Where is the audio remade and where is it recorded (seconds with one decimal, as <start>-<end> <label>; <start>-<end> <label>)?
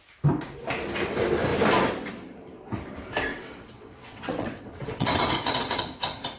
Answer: 0.0-3.3 recorded; 3.3-5.8 remade; 5.8-6.4 recorded